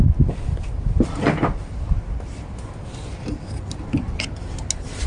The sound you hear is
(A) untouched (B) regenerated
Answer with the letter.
A